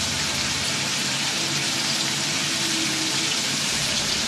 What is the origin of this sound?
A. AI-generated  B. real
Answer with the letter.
A